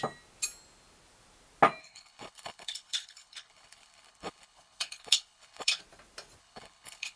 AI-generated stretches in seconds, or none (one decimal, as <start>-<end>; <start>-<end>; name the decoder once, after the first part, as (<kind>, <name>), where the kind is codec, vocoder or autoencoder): 1.8-5.8 (codec, HILCodec); 6.4-7.2